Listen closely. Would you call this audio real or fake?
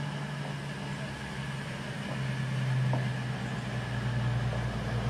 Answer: real